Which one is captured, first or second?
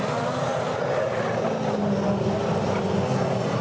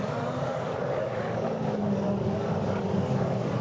first